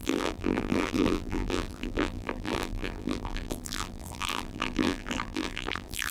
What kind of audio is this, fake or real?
fake